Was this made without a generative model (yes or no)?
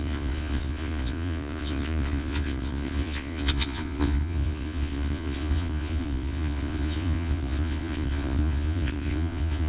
no